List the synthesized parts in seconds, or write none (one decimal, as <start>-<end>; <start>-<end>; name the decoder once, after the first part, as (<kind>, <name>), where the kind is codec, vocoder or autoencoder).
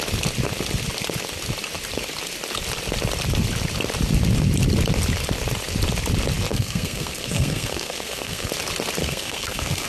6.5-8.5 (codec, SNAC); 9.0-9.9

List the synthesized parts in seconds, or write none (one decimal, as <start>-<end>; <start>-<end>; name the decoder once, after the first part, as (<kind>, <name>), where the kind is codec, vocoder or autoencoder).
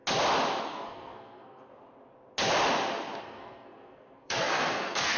0.6-1.7 (codec, SNAC); 3.2-5.2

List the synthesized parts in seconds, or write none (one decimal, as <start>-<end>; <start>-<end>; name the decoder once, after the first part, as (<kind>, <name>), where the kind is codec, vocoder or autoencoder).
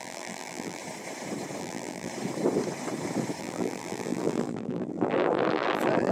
0.0-0.8 (vocoder, BigVGAN v2); 1.6-2.1; 3.4-6.1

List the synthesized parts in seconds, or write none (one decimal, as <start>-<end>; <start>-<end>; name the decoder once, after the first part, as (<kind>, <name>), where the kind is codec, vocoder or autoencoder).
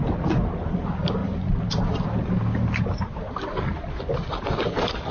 none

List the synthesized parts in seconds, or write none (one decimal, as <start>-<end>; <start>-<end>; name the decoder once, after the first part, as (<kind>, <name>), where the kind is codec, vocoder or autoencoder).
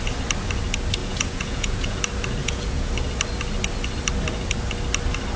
1.0-2.0 (vocoder, Vocos); 2.4-2.9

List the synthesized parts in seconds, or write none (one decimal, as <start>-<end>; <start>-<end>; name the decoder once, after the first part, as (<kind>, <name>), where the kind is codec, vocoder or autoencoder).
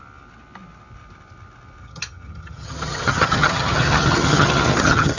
1.8-5.2 (vocoder, HiFi-GAN)